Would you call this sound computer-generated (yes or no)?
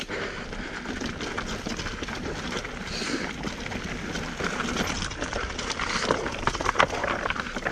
no